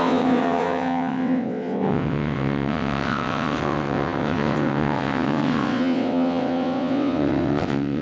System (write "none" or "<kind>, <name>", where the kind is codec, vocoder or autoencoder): vocoder, WaveNeXt